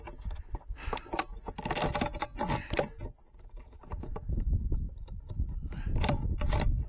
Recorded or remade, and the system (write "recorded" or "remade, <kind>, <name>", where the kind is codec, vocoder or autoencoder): recorded